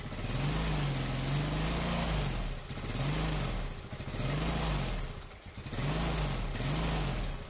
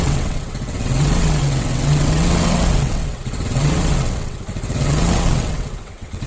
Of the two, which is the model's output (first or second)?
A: second